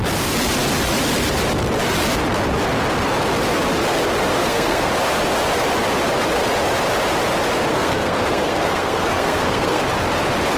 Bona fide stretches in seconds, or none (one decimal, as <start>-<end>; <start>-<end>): 0.0-4.3; 4.9-7.7; 9.8-10.6